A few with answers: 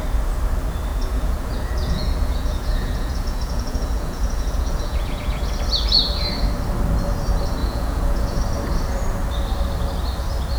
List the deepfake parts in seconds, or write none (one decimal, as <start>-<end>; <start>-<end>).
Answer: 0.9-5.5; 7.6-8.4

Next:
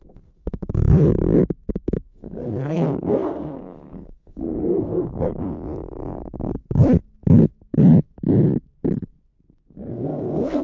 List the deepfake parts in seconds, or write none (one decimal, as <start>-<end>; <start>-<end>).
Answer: 0.0-0.6; 1.7-5.4; 9.9-10.6

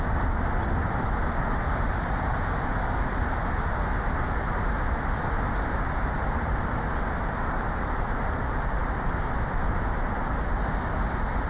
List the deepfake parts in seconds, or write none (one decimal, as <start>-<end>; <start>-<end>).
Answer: none

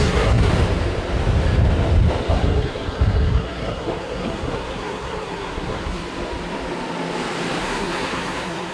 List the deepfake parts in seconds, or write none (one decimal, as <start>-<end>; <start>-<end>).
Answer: 0.0-0.5; 2.3-6.0; 7.6-8.7